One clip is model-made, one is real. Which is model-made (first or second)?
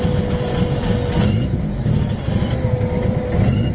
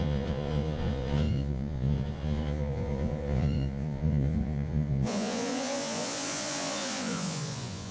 second